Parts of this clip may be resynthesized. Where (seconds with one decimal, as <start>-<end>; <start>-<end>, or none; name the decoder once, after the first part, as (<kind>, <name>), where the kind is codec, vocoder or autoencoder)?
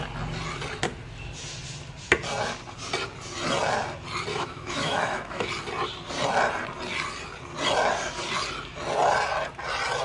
4.3-5.5 (autoencoder, DAC-VAE)